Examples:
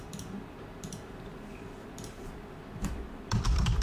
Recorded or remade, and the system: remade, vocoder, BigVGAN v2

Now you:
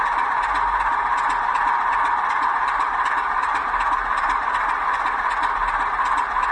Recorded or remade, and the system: recorded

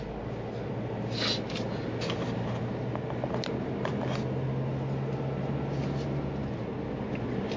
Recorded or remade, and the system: recorded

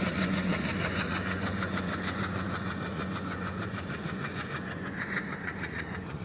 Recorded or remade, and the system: remade, vocoder, Vocos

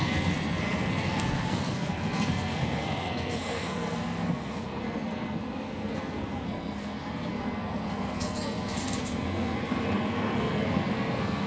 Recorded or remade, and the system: remade, codec, SNAC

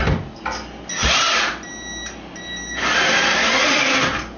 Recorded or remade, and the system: recorded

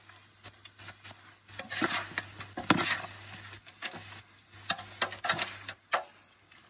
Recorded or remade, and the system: recorded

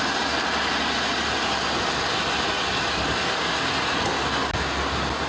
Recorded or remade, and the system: recorded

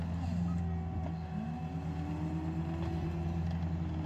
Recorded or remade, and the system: recorded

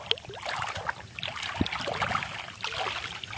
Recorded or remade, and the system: recorded